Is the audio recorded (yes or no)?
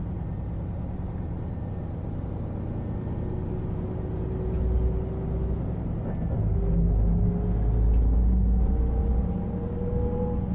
yes